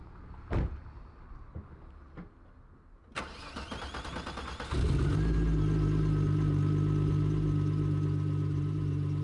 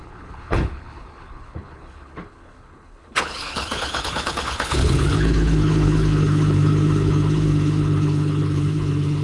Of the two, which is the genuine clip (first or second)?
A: first